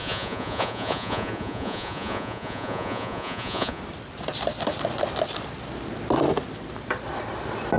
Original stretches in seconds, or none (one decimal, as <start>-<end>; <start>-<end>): 3.8-7.8

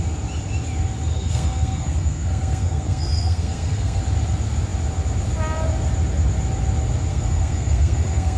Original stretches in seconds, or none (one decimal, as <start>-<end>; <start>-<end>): 0.0-1.1; 4.0-7.1

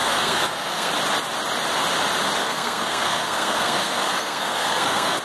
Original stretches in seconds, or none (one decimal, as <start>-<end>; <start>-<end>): 0.9-2.4

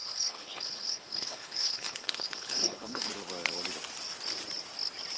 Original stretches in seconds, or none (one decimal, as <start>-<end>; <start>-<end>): 3.1-5.2